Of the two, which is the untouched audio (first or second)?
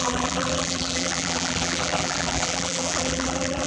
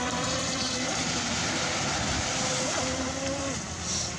second